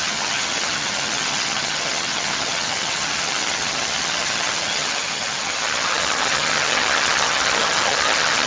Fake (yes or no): yes